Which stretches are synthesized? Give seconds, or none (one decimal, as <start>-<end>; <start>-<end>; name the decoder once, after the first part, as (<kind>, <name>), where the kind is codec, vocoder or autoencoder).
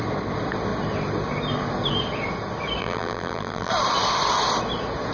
2.8-3.7 (vocoder, BigVGAN v2)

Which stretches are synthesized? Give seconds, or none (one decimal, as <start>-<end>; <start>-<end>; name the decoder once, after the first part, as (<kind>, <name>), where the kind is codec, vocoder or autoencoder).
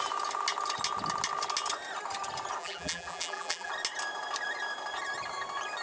2.6-3.7 (vocoder, BigVGAN v2)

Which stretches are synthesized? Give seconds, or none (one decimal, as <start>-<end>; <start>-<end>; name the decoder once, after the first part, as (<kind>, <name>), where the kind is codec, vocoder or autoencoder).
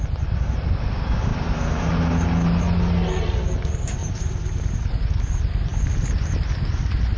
1.3-1.8 (vocoder, BigVGAN v2); 4.0-5.2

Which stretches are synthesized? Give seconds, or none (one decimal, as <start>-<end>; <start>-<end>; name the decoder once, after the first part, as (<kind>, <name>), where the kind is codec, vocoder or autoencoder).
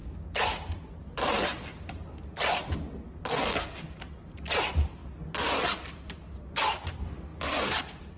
7.3-8.2 (vocoder, BigVGAN v2)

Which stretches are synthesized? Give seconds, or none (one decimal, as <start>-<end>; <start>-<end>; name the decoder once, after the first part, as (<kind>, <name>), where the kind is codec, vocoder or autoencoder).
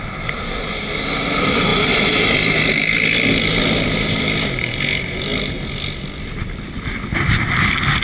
none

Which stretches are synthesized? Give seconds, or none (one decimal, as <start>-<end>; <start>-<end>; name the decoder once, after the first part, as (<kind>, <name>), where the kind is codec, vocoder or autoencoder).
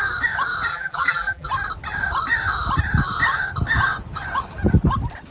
0.7-1.5 (vocoder, BigVGAN v2)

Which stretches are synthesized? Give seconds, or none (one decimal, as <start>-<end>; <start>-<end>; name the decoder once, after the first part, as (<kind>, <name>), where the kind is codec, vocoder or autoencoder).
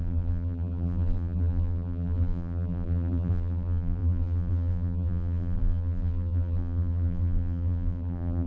0.0-8.5 (vocoder, BigVGAN v2)